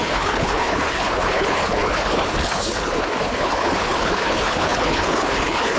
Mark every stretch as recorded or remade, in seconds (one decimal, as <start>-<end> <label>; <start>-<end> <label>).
0.0-5.8 remade